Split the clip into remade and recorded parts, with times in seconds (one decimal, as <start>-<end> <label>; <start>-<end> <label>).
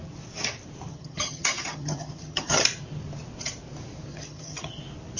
0.0-0.9 recorded; 0.9-2.6 remade; 2.6-4.1 recorded; 4.1-4.8 remade; 4.8-5.2 recorded